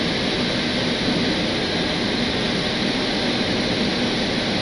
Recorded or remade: recorded